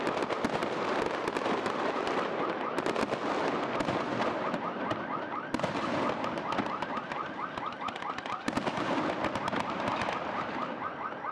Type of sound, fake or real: real